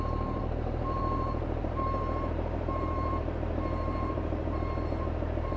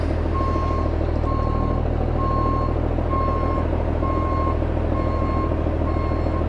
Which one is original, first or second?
second